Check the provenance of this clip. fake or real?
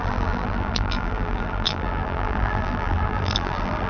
fake